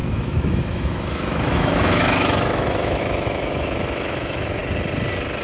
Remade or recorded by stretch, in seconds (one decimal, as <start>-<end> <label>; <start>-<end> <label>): 0.0-4.6 remade; 4.6-5.4 recorded